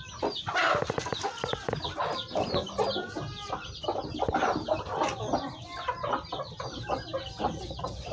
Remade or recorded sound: recorded